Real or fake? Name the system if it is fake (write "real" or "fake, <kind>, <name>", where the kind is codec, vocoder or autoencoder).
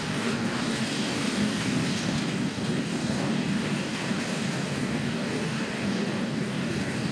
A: fake, codec, DAC